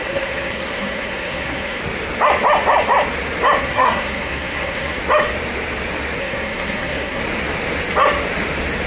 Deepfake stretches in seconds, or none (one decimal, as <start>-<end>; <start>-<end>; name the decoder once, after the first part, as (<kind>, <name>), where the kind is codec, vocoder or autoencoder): 0.0-1.8 (codec, SNAC); 3.6-5.0; 6.2-7.2